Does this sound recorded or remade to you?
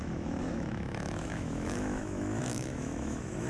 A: remade